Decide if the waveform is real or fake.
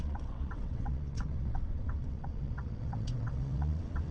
fake